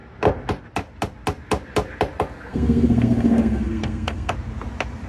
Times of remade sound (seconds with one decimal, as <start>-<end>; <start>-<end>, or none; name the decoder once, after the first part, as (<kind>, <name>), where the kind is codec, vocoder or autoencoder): 2.5-4.3 (codec, SNAC)